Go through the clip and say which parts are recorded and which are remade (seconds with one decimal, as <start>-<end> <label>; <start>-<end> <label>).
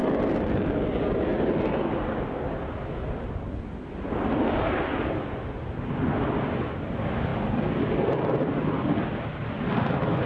0.0-10.3 recorded